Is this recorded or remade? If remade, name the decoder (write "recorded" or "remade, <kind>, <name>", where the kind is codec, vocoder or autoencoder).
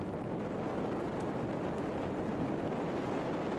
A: recorded